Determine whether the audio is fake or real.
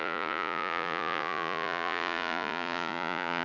fake